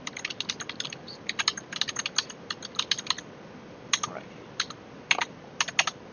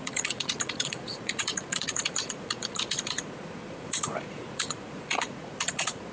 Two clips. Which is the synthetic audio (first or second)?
second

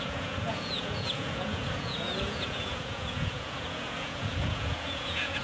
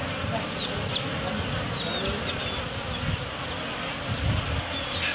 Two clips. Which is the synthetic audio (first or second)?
first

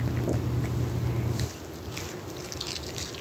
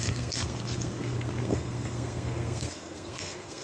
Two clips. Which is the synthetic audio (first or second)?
second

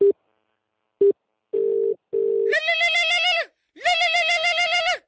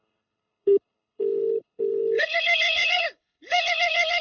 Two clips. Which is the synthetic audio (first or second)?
second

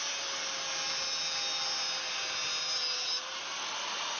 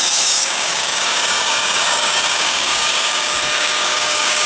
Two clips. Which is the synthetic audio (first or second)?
second